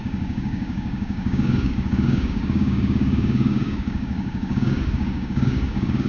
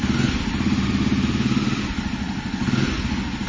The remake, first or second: first